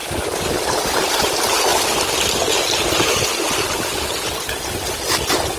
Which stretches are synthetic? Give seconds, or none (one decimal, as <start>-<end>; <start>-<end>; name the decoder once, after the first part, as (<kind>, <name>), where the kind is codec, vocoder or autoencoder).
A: none